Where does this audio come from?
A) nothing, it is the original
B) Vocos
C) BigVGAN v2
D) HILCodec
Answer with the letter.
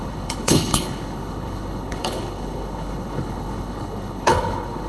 D